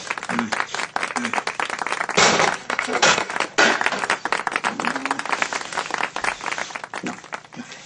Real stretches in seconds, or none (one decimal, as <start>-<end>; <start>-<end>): 0.0-2.6; 3.3-7.9